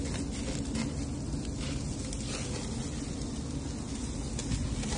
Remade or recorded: recorded